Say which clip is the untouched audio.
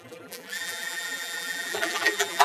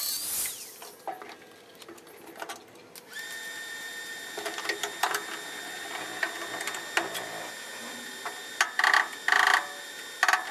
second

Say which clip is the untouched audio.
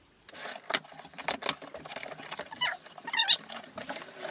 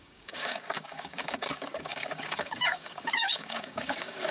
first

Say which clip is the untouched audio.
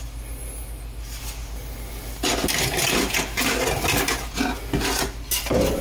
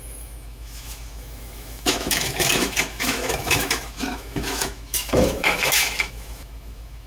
first